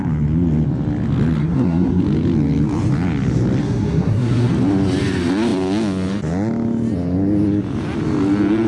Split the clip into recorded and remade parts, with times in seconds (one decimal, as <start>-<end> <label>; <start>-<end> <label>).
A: 0.0-1.4 recorded; 1.4-2.0 remade; 2.0-3.6 recorded; 3.6-4.5 remade; 4.5-8.7 recorded